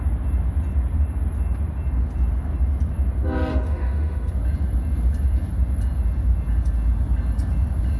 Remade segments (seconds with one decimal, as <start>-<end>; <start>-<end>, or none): 3.5-4.3